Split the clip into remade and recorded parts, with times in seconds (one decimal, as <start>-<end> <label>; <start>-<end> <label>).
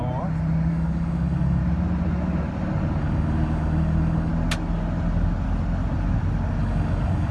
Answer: 0.0-0.7 recorded; 0.7-1.6 remade; 1.6-3.0 recorded; 3.0-4.3 remade; 4.3-6.6 recorded; 6.6-7.3 remade